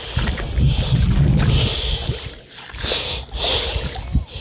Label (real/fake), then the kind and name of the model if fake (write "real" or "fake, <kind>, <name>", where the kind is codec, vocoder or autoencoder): real